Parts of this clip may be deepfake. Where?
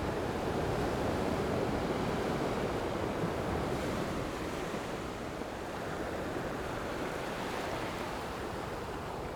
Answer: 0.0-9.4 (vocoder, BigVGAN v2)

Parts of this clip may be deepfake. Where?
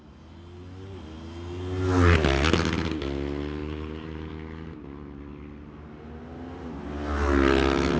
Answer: 3.6-4.3 (vocoder, BigVGAN v2)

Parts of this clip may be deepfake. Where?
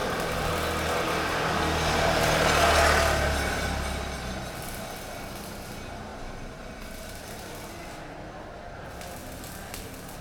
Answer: 0.0-0.5 (vocoder, BigVGAN v2); 6.1-7.2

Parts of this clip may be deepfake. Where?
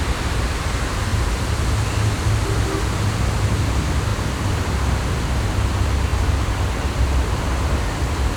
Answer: none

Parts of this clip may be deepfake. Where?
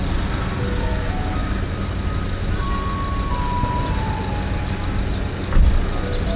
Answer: none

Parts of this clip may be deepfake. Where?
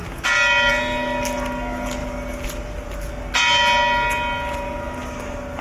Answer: none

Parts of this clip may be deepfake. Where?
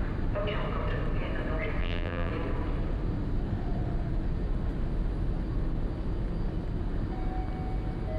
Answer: 1.8-2.3 (vocoder, BigVGAN v2)